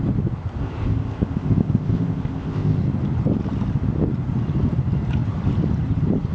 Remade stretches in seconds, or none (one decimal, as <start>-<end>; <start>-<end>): 0.6-2.8